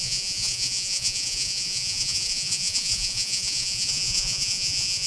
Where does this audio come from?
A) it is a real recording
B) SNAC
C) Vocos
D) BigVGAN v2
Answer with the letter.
C